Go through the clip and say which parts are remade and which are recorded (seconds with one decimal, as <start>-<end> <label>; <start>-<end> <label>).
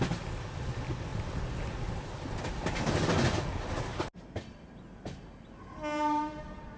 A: 0.0-6.8 recorded